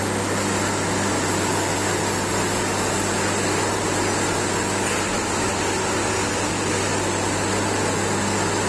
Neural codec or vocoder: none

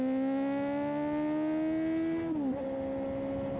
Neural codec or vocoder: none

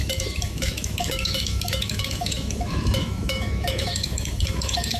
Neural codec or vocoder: autoencoder, DAC-VAE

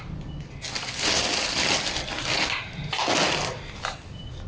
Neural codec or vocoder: none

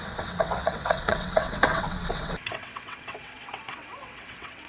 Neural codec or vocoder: vocoder, WaveNeXt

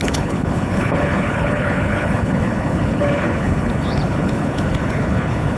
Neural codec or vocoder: codec, HILCodec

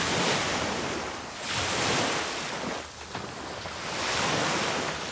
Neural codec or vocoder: none